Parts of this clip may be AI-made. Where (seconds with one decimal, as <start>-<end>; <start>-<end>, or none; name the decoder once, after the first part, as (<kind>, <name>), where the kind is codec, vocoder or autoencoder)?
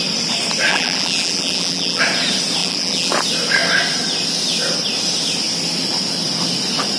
0.7-2.0 (vocoder, BigVGAN v2); 2.6-3.1